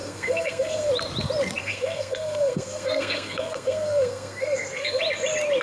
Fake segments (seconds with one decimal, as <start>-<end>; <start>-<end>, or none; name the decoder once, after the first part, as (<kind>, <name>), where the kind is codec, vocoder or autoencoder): 0.0-0.9 (codec, SNAC); 1.6-5.0